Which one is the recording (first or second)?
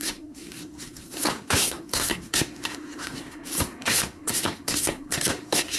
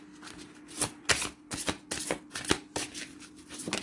second